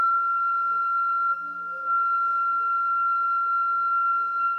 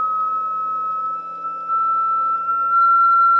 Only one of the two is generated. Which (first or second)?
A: first